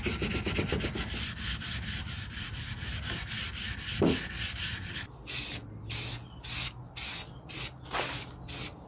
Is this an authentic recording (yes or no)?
yes